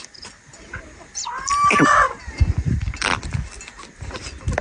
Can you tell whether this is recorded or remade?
recorded